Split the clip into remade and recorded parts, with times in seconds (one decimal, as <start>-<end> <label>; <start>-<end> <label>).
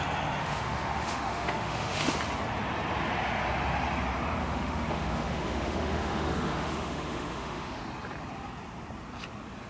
0.0-0.4 recorded; 0.4-2.1 remade; 2.1-4.4 recorded; 4.4-7.8 remade; 7.8-9.7 recorded